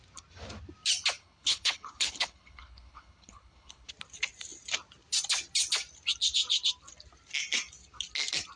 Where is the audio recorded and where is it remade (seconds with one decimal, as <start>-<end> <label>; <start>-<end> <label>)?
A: 0.0-1.2 recorded; 1.2-3.9 remade; 3.9-8.6 recorded